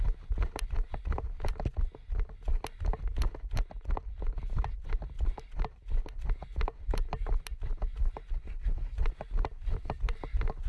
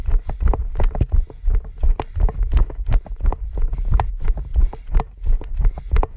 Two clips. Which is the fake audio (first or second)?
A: first